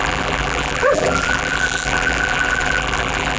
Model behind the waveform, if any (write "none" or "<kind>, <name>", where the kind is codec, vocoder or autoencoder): vocoder, BigVGAN v2